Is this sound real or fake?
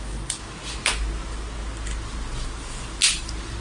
real